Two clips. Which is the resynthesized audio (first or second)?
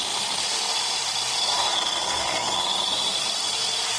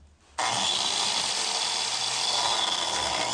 first